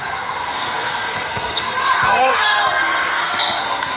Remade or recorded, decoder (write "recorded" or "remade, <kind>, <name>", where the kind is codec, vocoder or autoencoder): remade, codec, SNAC